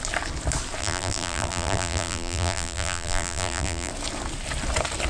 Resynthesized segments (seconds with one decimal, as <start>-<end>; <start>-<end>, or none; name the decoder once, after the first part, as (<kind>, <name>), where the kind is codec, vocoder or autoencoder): 0.8-3.9 (vocoder, BigVGAN v2)